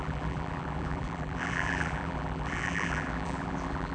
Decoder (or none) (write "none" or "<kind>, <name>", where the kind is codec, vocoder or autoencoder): vocoder, BigVGAN v2